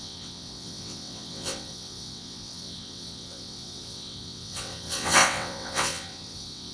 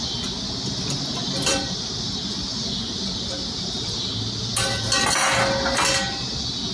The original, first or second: second